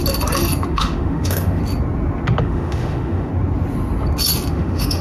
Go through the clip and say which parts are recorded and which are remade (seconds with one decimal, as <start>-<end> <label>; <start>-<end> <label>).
0.0-0.7 recorded; 0.7-1.6 remade; 1.6-2.4 recorded; 2.4-3.3 remade; 3.3-4.5 recorded; 4.5-5.0 remade